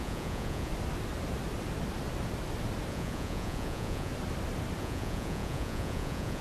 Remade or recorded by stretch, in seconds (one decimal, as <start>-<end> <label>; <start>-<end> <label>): 0.0-0.7 remade; 0.7-2.9 recorded; 2.9-4.1 remade; 4.1-4.8 recorded; 4.8-6.4 remade